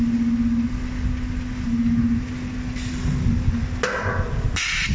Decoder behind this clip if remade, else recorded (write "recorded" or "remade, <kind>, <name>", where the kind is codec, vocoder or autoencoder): recorded